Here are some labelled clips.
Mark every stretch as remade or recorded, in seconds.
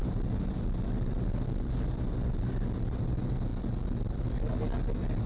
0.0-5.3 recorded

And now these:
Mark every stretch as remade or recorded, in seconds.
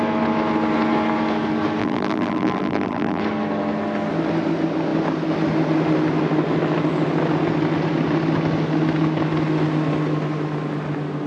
0.0-1.8 recorded; 1.8-3.2 remade; 3.2-11.3 recorded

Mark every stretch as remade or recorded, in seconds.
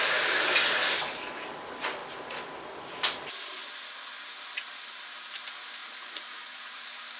0.0-5.8 recorded; 5.8-6.8 remade; 6.8-7.2 recorded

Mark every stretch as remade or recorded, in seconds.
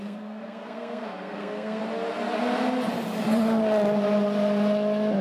0.0-1.8 remade; 1.8-5.2 recorded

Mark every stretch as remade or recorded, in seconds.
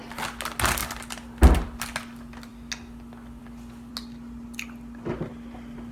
0.0-5.9 recorded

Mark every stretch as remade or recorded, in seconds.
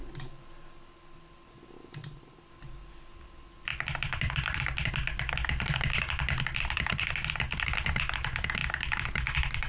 0.0-2.0 recorded; 2.0-2.5 remade; 2.5-3.7 recorded; 3.7-4.9 remade; 4.9-9.7 recorded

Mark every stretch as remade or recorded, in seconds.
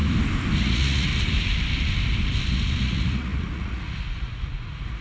0.0-0.6 recorded; 0.6-1.1 remade; 1.1-2.8 recorded; 2.8-5.0 remade